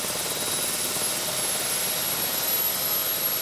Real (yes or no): yes